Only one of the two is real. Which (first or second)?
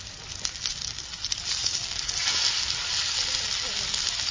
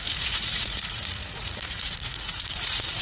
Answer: first